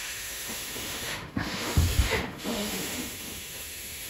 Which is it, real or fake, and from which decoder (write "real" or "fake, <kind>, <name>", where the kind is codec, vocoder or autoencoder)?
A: fake, autoencoder, DAC-VAE